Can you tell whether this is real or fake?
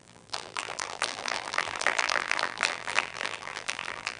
fake